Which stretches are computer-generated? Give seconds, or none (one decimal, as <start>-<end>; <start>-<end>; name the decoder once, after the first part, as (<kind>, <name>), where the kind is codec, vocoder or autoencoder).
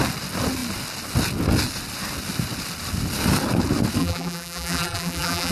4.0-5.5 (vocoder, BigVGAN v2)